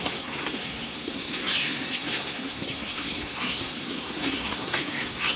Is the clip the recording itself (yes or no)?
no